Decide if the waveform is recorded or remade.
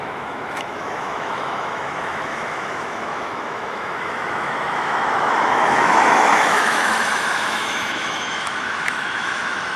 remade